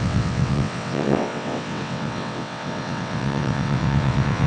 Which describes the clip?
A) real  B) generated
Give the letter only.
B